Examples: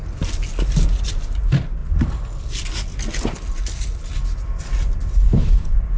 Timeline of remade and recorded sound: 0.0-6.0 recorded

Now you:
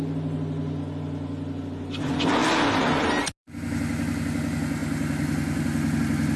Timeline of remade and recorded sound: 0.0-6.4 recorded

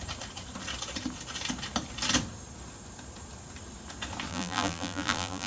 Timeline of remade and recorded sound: 0.0-4.3 recorded; 4.3-5.5 remade

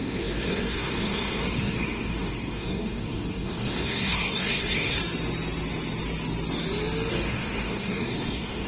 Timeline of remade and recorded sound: 0.0-5.0 remade; 5.0-7.1 recorded; 7.1-8.7 remade

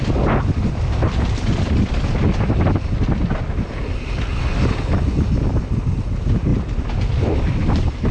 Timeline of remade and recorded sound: 0.0-6.5 recorded; 6.5-7.3 remade; 7.3-8.1 recorded

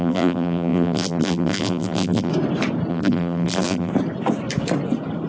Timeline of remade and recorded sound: 0.0-2.3 remade; 2.3-2.9 recorded; 2.9-3.9 remade; 3.9-5.3 recorded